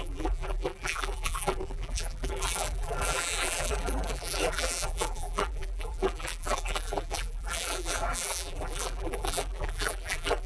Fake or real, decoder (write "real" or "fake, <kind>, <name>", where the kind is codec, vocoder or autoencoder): fake, vocoder, BigVGAN v2